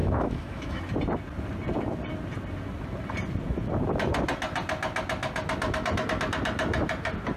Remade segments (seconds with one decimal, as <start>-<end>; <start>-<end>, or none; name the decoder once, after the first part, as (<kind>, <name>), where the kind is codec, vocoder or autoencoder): 0.0-0.8 (autoencoder, DAC-VAE)